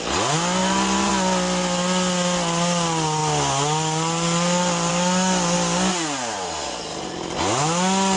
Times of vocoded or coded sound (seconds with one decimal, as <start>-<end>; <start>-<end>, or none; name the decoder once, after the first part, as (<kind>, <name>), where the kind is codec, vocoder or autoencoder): 0.6-1.1 (vocoder, BigVGAN v2); 6.9-7.4